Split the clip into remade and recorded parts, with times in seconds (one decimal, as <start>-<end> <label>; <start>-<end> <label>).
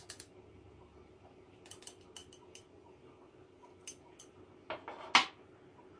0.0-6.0 recorded